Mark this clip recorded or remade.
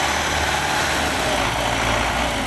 recorded